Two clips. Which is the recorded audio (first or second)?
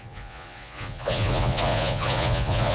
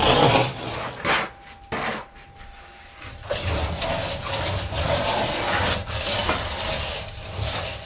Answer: second